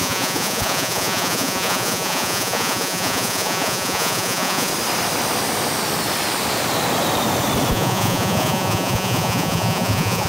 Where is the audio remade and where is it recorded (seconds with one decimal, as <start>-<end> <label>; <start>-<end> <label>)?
0.0-4.7 remade; 4.7-7.7 recorded; 7.7-10.3 remade